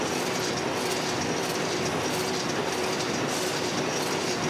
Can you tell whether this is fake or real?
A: real